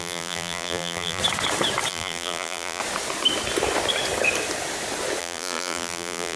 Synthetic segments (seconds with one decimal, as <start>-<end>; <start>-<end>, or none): 0.0-1.2; 1.9-2.8; 5.2-6.4